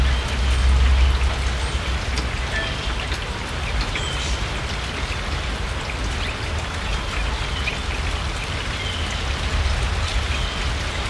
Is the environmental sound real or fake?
real